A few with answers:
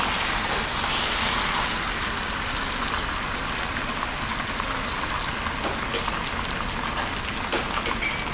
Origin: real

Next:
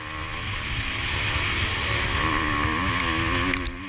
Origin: real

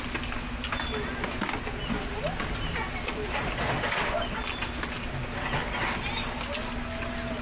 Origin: real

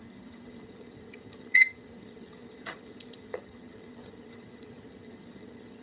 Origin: fake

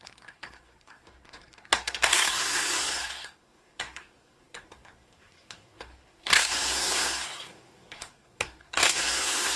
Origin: fake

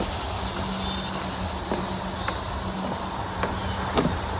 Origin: real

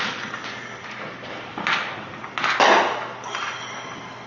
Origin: real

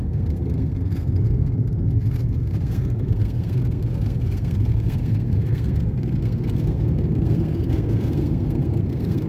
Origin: fake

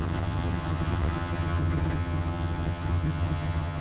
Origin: fake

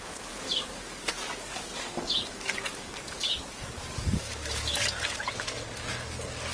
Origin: fake